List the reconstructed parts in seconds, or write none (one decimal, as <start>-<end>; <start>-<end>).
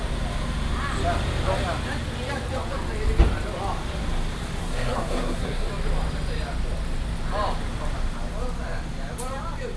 4.6-5.7